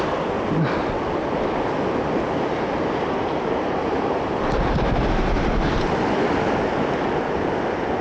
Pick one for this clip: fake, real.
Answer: real